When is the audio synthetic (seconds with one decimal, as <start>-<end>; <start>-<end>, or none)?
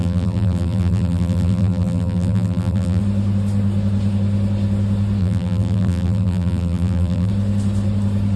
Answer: 0.0-3.0; 5.2-7.3